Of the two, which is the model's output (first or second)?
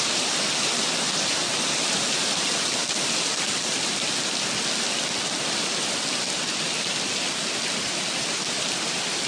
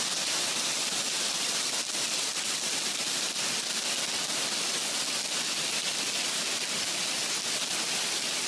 first